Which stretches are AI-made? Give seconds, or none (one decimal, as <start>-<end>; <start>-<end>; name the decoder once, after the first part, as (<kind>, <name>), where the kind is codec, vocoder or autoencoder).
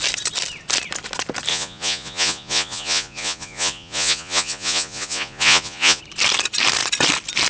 1.5-6.0 (vocoder, Vocos)